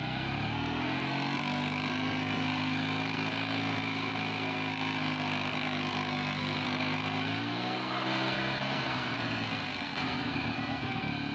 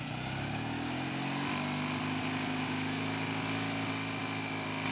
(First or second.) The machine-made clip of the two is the first